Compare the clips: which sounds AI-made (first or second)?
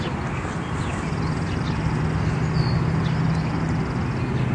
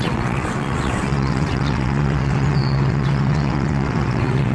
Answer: second